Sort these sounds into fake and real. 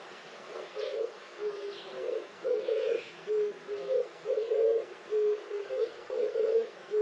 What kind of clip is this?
fake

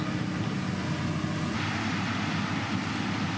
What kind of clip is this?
real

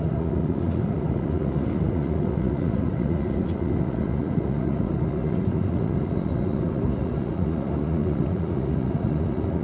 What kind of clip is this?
fake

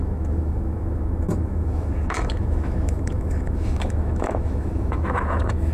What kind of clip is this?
fake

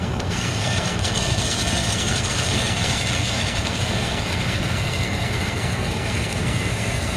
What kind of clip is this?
fake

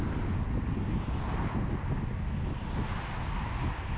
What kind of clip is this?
real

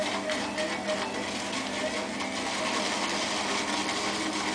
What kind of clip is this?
real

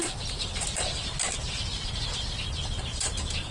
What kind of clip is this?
fake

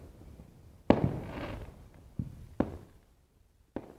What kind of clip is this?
real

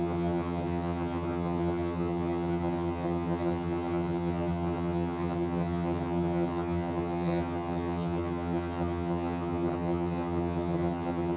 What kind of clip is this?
fake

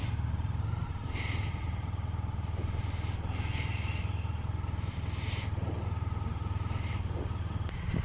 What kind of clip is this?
real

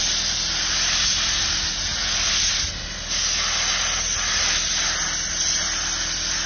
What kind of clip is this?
real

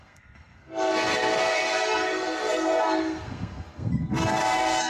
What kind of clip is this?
fake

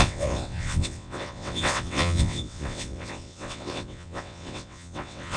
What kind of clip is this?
fake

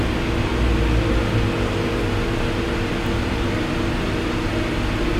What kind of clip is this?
real